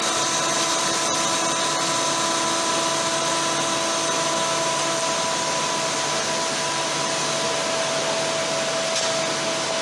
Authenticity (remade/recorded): recorded